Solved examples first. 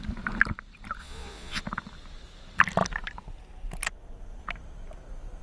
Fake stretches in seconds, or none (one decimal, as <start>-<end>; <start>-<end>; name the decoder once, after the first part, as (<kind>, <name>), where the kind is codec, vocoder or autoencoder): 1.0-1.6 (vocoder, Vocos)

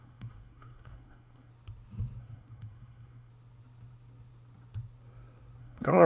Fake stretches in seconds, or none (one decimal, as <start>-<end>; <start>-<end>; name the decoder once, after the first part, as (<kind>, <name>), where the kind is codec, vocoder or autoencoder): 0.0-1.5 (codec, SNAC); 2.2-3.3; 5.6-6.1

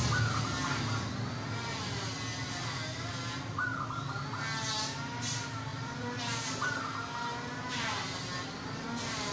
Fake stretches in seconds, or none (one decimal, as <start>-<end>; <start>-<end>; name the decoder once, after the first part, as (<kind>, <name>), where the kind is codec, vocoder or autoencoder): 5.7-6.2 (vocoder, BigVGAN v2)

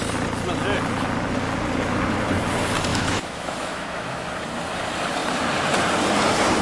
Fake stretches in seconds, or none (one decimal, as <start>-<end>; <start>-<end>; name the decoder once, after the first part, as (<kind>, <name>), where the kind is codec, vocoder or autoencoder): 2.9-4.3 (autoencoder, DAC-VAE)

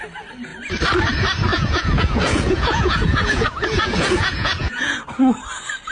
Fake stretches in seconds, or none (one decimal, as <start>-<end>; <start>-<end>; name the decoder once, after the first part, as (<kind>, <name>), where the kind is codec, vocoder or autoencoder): 1.5-5.0 (vocoder, Vocos)